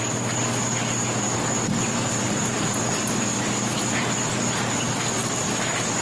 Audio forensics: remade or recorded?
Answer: recorded